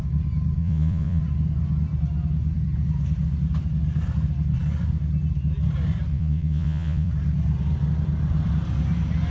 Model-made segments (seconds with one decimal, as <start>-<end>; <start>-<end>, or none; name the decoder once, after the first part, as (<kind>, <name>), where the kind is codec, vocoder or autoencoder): 0.6-1.2 (vocoder, Vocos); 6.1-7.1

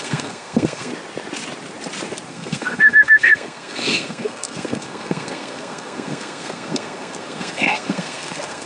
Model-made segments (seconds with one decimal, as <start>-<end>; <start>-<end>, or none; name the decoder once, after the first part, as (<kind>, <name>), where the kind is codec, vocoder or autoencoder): 0.0-0.9 (codec, SNAC); 2.3-8.7

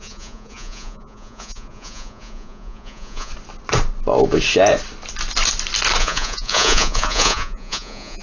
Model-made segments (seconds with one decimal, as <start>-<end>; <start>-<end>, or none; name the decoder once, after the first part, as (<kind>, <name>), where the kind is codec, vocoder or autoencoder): 0.0-3.3 (vocoder, Vocos); 6.0-8.2

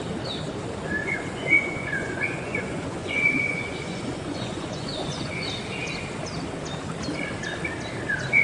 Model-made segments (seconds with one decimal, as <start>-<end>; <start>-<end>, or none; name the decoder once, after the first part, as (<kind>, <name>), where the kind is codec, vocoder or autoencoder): 1.0-5.5 (vocoder, Vocos)

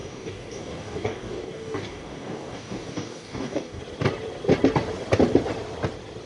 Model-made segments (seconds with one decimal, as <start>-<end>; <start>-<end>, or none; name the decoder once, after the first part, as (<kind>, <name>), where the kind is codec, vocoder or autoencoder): 0.0-3.8 (codec, DAC)